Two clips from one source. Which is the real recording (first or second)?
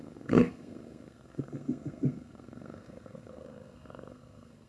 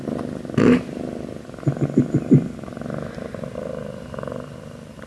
second